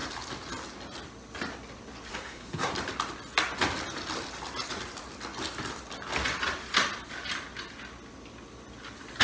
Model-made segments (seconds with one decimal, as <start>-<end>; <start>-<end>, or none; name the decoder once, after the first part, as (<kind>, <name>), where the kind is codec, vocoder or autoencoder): 2.1-2.7 (codec, SNAC)